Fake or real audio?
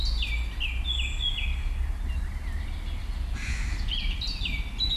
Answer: real